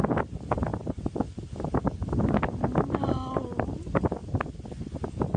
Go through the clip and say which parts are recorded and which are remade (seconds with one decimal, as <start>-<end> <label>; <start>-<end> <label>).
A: 0.0-5.4 recorded